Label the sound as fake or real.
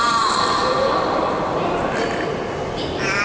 real